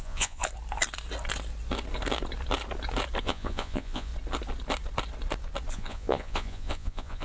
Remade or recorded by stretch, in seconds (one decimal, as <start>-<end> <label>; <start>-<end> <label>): 0.0-0.4 remade; 0.4-3.2 recorded; 3.2-4.1 remade; 4.1-5.7 recorded; 5.7-7.2 remade